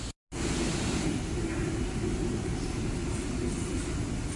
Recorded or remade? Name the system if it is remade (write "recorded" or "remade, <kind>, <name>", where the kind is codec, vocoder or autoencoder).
recorded